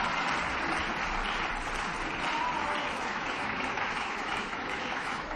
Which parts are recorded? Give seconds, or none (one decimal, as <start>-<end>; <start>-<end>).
0.0-2.8